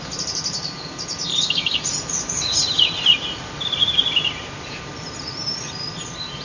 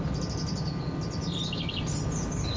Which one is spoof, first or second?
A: first